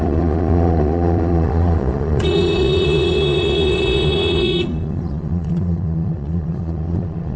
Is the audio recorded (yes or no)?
no